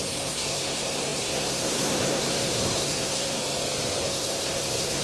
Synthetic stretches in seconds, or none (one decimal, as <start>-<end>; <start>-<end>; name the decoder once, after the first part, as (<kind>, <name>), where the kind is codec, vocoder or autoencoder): 0.0-3.4 (codec, SNAC); 4.0-5.0